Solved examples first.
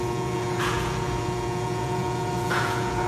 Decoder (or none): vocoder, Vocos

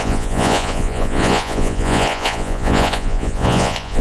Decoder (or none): vocoder, Vocos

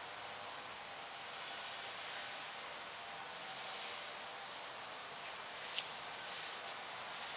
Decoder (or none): none